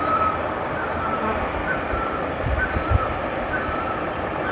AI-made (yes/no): no